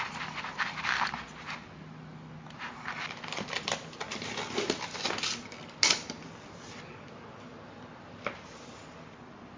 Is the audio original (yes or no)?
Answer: yes